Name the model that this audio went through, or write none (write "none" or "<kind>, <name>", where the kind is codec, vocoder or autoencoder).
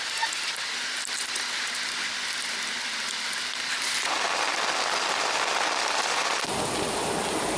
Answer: none